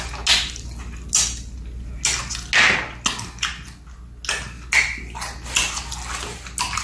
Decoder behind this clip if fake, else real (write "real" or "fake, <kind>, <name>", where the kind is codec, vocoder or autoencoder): real